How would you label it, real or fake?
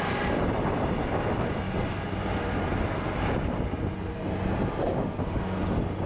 real